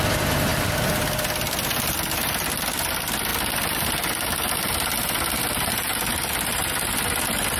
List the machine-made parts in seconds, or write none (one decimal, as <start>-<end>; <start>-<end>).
none